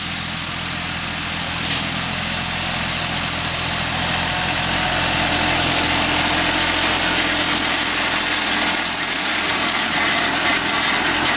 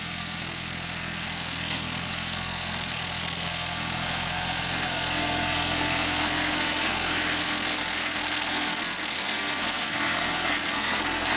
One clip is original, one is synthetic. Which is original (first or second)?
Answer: first